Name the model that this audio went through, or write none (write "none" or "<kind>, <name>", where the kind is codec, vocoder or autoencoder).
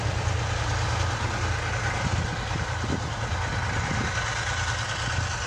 none